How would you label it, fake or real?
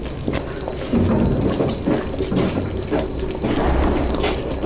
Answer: real